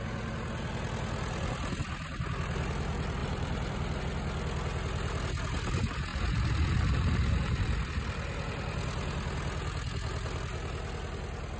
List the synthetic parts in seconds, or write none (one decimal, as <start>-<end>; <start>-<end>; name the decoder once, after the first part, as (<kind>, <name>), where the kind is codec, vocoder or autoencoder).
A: 3.2-4.0 (vocoder, BigVGAN v2)